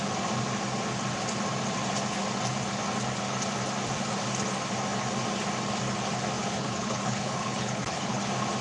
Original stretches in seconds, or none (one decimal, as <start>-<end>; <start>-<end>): 0.0-6.4; 8.2-8.6